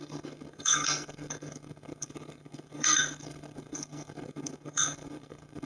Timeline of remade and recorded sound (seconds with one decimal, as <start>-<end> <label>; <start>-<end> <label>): 0.0-5.7 remade